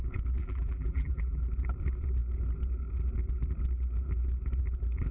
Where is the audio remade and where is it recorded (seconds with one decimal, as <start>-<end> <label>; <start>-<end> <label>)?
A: 0.0-0.4 recorded; 0.4-1.4 remade; 1.4-5.1 recorded